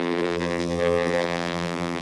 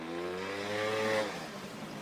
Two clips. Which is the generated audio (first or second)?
first